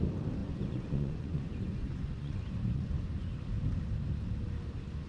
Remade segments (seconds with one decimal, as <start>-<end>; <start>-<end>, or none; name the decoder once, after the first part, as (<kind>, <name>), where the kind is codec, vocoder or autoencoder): 0.4-3.3 (vocoder, Vocos)